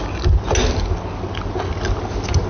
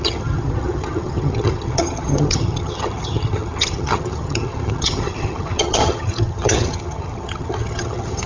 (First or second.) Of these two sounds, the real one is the first